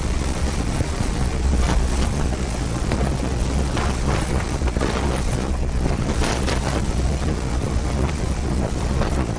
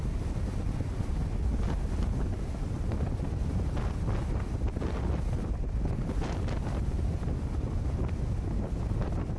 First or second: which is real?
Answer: second